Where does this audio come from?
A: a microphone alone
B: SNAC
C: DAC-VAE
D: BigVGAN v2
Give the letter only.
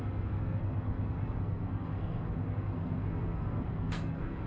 B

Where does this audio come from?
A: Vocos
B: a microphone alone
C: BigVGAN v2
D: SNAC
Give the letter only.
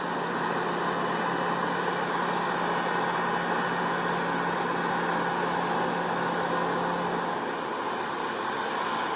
B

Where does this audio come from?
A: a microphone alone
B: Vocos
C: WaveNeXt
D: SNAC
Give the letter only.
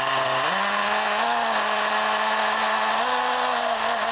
A